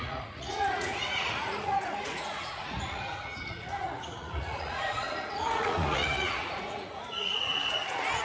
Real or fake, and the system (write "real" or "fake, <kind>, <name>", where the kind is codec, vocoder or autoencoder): fake, vocoder, Vocos